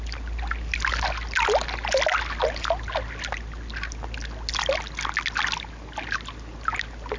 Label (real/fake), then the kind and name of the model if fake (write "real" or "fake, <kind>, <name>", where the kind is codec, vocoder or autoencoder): real